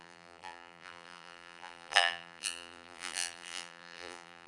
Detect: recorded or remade remade